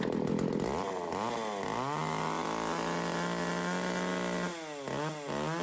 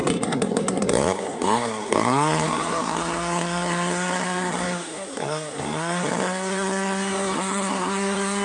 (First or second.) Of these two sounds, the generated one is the second